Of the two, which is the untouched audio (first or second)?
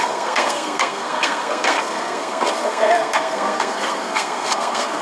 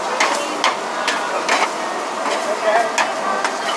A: second